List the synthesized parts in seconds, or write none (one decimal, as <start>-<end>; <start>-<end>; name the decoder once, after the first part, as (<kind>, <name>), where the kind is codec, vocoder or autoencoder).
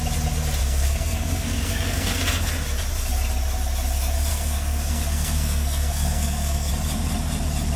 0.6-2.5 (codec, SNAC); 4.3-6.7